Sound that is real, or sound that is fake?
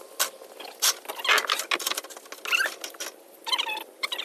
real